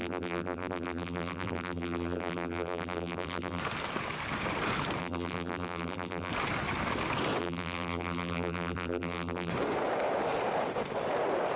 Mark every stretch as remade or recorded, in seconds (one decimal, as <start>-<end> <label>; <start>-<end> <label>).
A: 0.0-3.6 remade; 3.6-5.0 recorded; 5.0-6.3 remade; 6.3-7.4 recorded; 7.4-9.5 remade; 9.5-11.6 recorded